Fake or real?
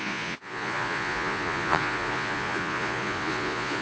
fake